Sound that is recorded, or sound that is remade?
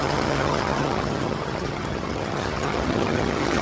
remade